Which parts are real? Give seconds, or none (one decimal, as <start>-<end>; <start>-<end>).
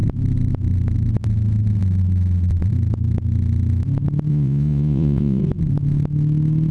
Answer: 0.0-4.3; 5.4-6.7